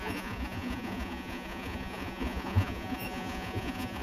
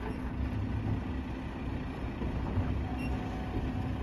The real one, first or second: second